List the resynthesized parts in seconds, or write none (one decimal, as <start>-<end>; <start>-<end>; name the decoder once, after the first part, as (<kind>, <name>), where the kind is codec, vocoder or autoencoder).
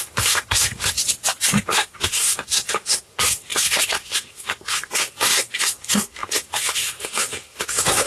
0.0-1.0 (codec, SNAC); 1.6-8.1